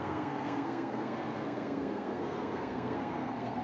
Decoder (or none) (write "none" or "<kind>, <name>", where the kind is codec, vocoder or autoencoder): codec, SNAC